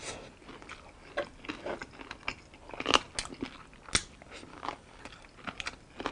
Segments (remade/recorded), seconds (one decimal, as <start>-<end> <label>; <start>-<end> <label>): 0.0-4.5 recorded; 4.5-5.0 remade; 5.0-6.1 recorded